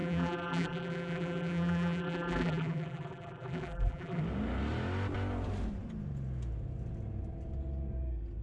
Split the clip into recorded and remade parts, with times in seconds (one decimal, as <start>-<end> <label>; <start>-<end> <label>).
0.0-4.2 remade; 4.2-8.4 recorded